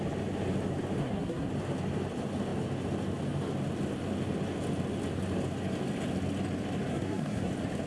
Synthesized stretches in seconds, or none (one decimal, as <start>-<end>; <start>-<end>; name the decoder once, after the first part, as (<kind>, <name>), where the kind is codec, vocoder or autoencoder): 1.0-1.5 (codec, SNAC); 6.9-7.5